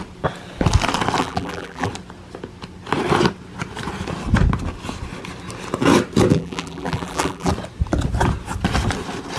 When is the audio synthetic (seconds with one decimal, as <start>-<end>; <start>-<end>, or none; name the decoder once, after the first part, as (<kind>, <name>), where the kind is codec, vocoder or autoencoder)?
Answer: 1.2-1.9 (vocoder, BigVGAN v2); 6.3-7.5